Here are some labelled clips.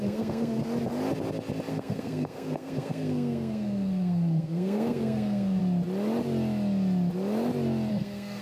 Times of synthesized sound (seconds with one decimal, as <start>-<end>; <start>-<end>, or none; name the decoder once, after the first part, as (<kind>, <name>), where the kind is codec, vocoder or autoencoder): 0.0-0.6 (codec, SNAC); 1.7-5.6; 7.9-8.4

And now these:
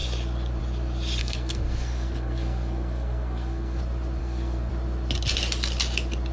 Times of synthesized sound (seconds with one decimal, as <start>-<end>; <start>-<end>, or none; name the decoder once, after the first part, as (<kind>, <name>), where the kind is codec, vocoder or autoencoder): 1.2-3.8 (codec, SNAC); 4.2-4.7

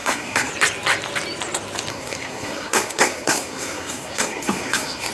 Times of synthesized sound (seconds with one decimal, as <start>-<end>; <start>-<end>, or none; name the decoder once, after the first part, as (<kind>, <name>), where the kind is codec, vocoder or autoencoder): 0.0-0.5 (codec, SNAC); 1.9-5.1

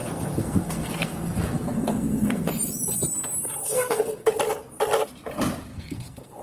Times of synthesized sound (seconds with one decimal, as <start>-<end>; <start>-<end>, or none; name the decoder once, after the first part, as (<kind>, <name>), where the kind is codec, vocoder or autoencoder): 0.0-2.5 (codec, SNAC); 3.6-4.3; 5.7-6.4